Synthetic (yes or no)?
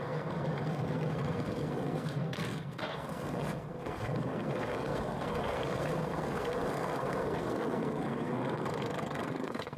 yes